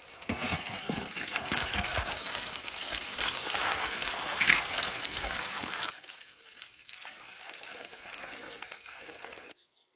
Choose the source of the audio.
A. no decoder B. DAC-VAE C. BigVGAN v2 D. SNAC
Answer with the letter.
D